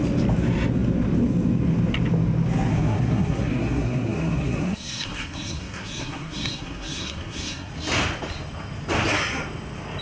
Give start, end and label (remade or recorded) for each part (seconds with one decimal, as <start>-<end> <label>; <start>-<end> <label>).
0.0-2.7 recorded; 2.7-7.7 remade; 7.7-10.0 recorded